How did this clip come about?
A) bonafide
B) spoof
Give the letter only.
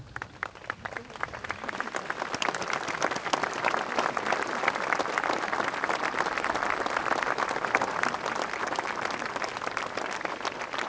A